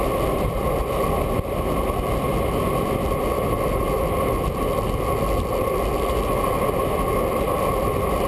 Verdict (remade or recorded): recorded